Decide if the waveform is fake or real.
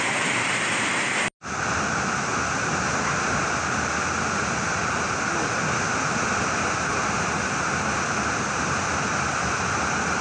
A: real